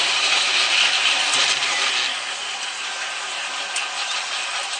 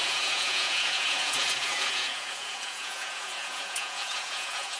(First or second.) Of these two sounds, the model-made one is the second